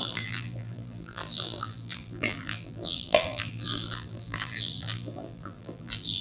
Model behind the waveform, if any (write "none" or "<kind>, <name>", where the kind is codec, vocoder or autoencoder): vocoder, BigVGAN v2